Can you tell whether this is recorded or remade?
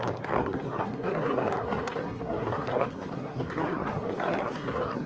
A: remade